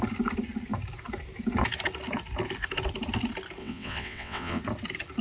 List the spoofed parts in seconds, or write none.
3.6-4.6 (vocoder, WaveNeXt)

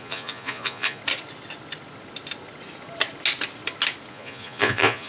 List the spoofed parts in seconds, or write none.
0.0-1.0 (vocoder, Vocos); 4.1-5.1

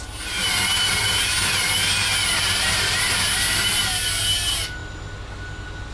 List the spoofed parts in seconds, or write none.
none